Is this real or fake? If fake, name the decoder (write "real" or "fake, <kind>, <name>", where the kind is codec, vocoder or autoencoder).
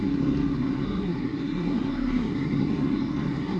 fake, codec, SNAC